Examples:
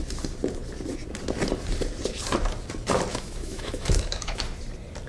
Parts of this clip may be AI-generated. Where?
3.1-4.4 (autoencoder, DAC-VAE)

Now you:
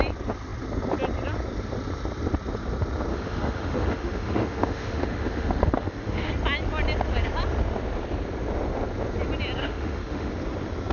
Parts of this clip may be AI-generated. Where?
3.1-6.3 (autoencoder, DAC-VAE); 9.6-10.3

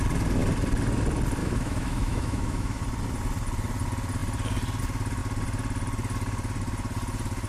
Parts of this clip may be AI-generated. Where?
1.4-2.8 (autoencoder, DAC-VAE)

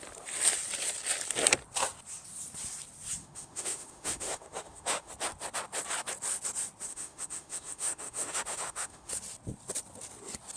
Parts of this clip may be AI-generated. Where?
3.2-5.1 (autoencoder, DAC-VAE); 6.9-9.1